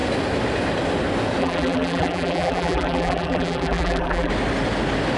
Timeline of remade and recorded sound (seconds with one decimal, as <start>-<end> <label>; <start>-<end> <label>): 0.0-1.4 recorded; 1.4-4.3 remade; 4.3-5.2 recorded